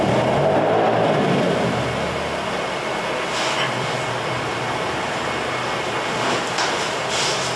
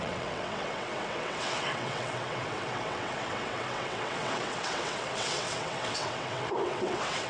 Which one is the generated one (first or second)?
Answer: second